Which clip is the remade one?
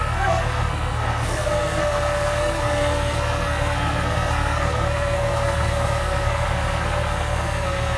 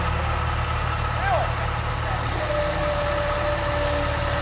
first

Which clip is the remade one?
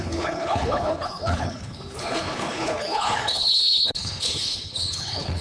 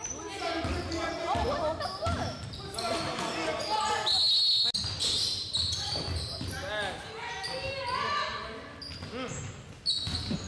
first